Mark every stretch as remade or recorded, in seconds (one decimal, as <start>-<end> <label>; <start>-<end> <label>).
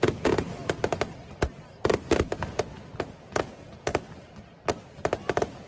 0.0-0.6 remade; 0.6-3.0 recorded; 3.0-3.9 remade; 3.9-5.7 recorded